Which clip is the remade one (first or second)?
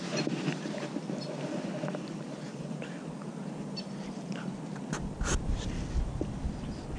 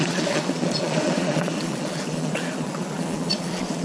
second